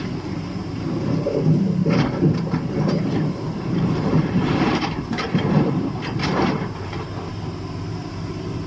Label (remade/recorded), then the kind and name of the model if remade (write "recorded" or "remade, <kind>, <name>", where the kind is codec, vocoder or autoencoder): remade, vocoder, BigVGAN v2